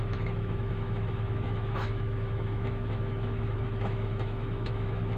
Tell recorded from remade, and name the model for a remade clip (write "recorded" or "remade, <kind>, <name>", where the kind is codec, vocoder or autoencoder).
remade, autoencoder, DAC-VAE